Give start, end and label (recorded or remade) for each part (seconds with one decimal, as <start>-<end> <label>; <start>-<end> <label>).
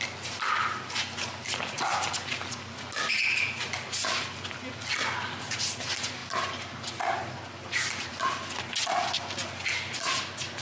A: 0.0-10.6 recorded